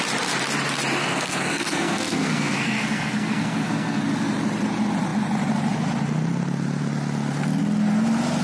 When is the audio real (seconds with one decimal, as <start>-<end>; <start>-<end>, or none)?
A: 0.0-1.0; 4.0-8.4

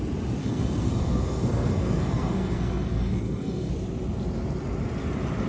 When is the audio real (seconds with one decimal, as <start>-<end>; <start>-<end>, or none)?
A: 0.0-0.4; 3.7-5.5